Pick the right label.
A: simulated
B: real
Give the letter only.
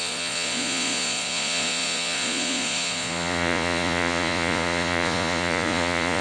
A